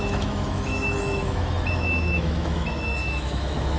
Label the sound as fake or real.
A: fake